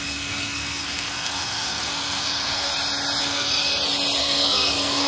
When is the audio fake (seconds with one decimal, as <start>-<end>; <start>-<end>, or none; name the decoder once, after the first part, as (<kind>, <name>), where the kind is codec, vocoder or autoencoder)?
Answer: 0.0-2.7 (codec, SNAC); 3.2-3.7; 4.2-5.1